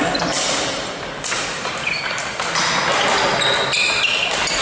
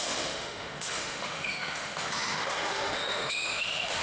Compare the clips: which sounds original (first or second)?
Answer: first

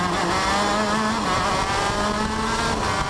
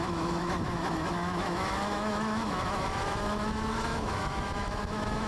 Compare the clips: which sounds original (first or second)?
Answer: first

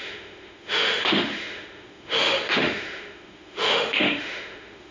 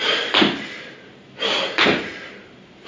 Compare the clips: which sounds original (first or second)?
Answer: second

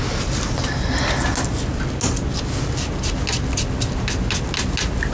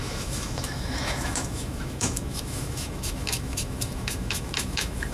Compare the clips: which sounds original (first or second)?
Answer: first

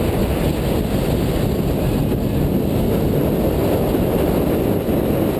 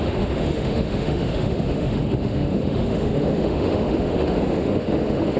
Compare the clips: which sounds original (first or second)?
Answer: first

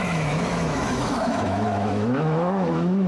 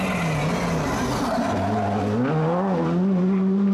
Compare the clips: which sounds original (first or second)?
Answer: second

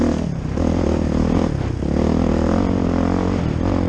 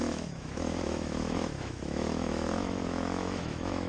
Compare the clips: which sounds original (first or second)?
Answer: first